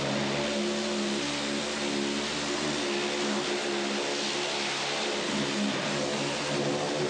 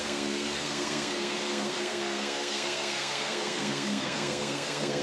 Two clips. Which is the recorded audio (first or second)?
first